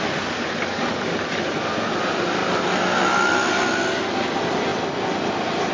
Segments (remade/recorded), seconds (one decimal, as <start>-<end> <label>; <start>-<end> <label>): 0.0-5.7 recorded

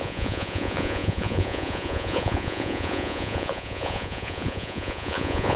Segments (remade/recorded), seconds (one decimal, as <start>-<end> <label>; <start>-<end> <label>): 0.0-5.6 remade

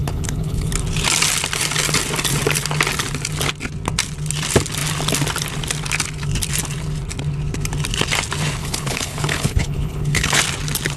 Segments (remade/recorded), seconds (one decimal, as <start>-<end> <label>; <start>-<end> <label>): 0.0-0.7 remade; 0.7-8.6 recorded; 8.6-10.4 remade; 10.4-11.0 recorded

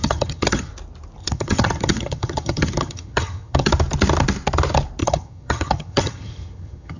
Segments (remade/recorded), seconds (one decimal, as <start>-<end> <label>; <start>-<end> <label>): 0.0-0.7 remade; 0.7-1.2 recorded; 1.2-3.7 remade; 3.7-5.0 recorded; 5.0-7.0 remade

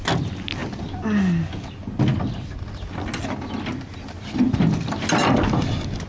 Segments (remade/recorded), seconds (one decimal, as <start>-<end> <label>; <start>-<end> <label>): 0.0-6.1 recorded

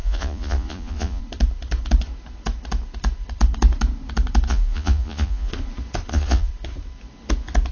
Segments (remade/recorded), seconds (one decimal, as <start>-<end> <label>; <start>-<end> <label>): 0.0-1.2 remade; 1.2-4.5 recorded; 4.5-5.5 remade; 5.5-6.1 recorded; 6.1-6.5 remade; 6.5-7.7 recorded